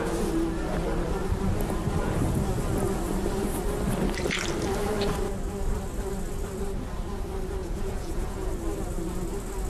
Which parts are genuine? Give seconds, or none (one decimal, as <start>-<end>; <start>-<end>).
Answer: 0.0-7.6; 8.5-9.7